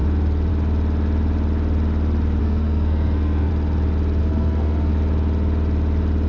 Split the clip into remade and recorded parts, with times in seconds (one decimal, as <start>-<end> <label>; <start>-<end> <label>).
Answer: 0.0-2.4 recorded; 2.4-3.5 remade; 3.5-4.2 recorded; 4.2-4.9 remade; 4.9-6.3 recorded